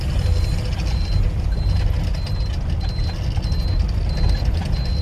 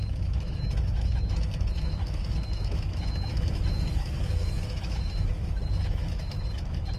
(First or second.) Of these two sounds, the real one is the first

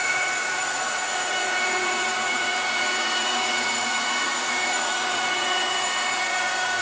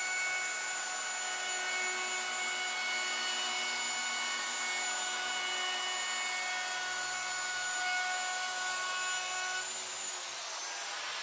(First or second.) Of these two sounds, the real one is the second